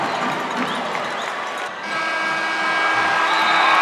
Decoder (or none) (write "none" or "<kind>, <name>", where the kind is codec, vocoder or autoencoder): none